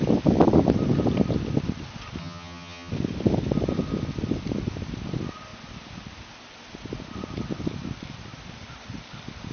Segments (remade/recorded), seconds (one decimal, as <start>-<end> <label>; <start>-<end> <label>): 0.0-2.2 recorded; 2.2-2.9 remade; 2.9-9.5 recorded